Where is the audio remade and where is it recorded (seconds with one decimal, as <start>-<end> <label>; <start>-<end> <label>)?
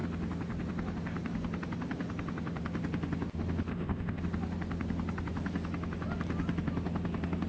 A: 0.0-3.7 recorded; 3.7-4.2 remade; 4.2-7.5 recorded